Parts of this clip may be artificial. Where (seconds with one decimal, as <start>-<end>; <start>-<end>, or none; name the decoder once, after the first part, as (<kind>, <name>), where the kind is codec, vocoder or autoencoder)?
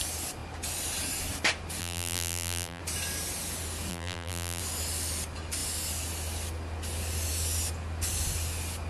1.8-2.8 (vocoder, BigVGAN v2); 3.9-4.6